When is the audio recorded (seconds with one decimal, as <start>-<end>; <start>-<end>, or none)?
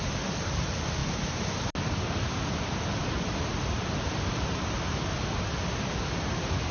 0.0-6.7